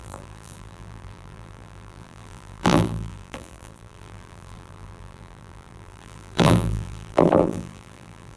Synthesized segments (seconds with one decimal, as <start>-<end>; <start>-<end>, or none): 0.0-8.4